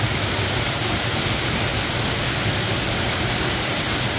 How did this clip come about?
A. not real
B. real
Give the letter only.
B